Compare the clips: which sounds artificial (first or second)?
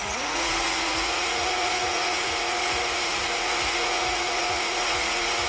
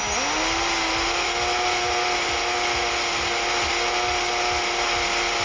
first